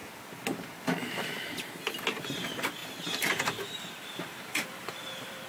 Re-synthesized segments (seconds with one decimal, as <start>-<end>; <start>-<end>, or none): 2.2-5.5